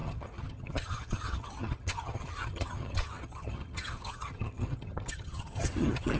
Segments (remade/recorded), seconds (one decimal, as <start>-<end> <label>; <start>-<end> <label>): 0.0-6.2 remade